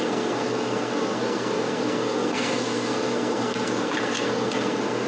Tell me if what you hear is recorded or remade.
remade